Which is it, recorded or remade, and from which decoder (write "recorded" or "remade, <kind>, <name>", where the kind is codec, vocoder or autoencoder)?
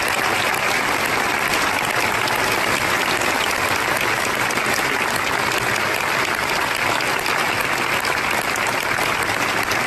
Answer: recorded